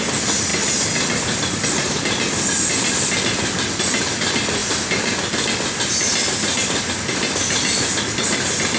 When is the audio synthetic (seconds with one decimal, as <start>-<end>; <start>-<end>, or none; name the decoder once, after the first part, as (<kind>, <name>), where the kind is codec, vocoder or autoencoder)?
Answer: none